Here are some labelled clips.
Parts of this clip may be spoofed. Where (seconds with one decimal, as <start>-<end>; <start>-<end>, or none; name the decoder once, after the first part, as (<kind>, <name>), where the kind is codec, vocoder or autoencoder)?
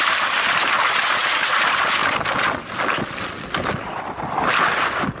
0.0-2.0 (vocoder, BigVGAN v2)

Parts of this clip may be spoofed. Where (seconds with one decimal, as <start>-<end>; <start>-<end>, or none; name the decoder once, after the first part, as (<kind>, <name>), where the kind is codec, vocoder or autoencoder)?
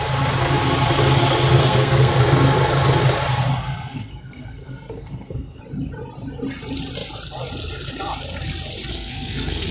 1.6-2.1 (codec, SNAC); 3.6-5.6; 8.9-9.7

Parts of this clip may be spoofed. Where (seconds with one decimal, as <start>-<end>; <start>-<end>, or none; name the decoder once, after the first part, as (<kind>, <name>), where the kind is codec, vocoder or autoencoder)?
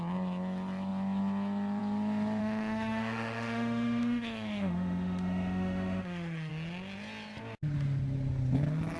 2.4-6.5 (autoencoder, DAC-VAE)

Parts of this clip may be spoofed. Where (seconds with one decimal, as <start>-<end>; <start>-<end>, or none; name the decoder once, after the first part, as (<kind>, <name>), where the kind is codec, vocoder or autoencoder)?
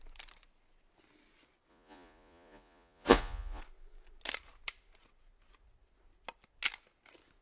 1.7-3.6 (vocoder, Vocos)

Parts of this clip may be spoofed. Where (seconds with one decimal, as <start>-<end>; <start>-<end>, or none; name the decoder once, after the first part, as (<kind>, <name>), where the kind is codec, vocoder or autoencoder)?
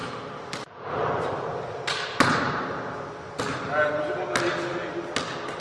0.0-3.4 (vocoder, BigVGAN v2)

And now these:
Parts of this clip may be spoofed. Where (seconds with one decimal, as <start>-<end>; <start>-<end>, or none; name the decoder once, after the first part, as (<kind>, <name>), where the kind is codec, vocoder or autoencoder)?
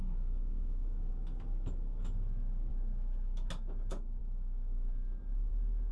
0.0-1.1 (autoencoder, DAC-VAE); 2.7-3.5